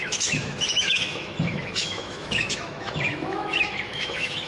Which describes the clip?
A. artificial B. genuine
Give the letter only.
A